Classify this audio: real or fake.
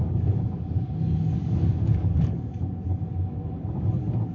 fake